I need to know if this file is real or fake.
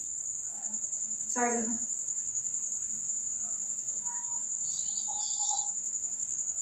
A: fake